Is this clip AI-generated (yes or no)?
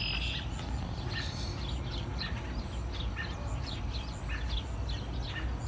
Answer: no